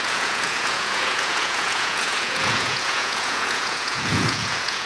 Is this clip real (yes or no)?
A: no